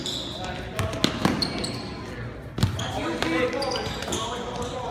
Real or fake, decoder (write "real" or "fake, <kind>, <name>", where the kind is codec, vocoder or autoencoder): real